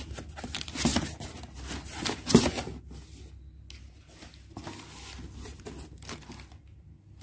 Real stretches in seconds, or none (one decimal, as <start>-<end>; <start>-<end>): 0.0-7.2